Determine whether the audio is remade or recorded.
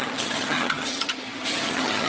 remade